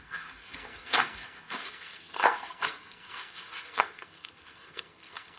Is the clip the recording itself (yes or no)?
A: no